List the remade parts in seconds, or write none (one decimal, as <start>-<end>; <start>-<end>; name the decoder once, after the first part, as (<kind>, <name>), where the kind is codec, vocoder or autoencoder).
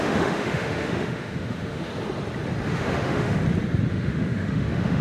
0.0-1.9 (autoencoder, DAC-VAE); 2.7-3.4; 3.9-5.0